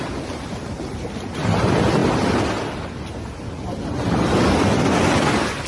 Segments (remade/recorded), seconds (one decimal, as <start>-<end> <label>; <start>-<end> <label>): 0.0-5.7 recorded